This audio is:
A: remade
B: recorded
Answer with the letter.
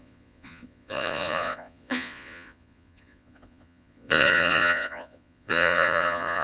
A